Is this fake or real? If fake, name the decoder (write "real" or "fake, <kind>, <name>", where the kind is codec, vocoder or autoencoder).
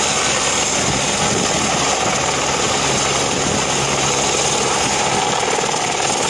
real